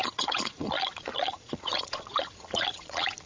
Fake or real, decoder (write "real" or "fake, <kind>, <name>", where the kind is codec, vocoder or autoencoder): fake, vocoder, Vocos